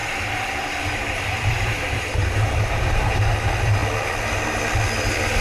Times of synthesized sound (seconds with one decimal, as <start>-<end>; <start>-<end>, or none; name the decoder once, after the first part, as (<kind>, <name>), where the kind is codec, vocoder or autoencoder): 0.0-3.2 (vocoder, BigVGAN v2)

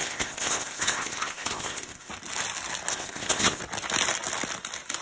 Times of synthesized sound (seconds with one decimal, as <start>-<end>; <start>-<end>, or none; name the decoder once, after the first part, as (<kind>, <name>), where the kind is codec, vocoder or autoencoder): 0.0-2.1 (codec, ZipCodec); 2.9-3.6

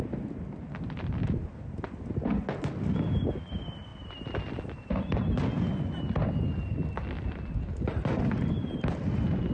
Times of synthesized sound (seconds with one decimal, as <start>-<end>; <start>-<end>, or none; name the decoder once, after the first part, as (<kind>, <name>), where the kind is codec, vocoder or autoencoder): none

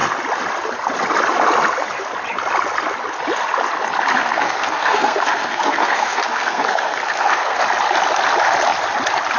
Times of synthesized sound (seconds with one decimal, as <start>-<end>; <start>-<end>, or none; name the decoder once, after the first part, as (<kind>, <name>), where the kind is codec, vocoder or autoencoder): 4.2-7.6 (codec, SNAC)

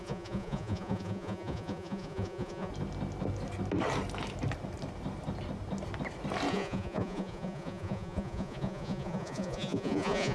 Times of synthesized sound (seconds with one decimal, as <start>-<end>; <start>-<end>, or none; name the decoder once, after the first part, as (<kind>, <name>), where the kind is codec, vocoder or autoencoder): 0.0-2.7 (vocoder, Vocos); 6.5-10.3